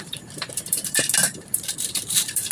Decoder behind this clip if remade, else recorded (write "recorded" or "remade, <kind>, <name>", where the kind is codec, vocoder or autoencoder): remade, vocoder, BigVGAN v2